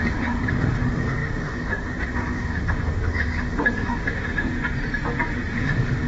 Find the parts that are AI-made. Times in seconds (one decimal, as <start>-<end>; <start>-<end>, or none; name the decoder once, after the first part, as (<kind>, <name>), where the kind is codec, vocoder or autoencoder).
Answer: 0.0-4.5 (autoencoder, DAC-VAE); 5.5-6.1

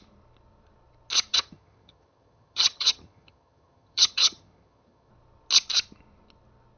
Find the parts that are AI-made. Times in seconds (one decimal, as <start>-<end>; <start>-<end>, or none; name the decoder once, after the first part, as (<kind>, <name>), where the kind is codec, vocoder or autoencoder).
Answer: 1.3-5.1 (vocoder, HiFi-GAN)

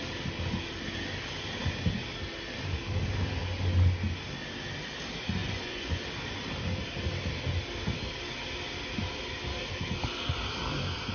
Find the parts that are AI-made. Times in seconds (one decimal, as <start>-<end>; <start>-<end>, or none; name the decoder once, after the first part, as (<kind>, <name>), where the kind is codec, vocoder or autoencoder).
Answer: 5.4-6.0 (vocoder, Vocos)

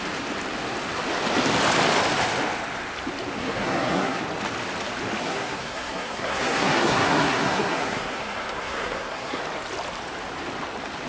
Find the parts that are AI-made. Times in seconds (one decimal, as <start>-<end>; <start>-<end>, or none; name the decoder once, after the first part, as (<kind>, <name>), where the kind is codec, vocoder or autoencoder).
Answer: 3.4-4.2 (codec, SNAC); 5.2-9.4

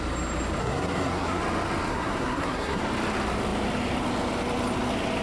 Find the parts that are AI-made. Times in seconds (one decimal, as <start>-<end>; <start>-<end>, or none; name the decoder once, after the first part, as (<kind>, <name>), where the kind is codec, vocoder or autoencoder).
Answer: 0.6-1.4 (codec, SNAC); 1.9-2.8